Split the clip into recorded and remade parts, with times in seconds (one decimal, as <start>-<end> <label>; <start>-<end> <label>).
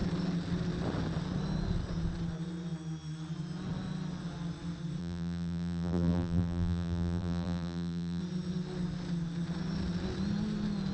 0.0-5.0 recorded; 5.0-8.2 remade; 8.2-10.9 recorded